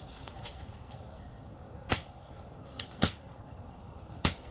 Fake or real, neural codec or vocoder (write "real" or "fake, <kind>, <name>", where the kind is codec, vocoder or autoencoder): fake, codec, SNAC